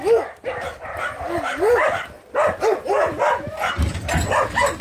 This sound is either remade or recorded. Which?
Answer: recorded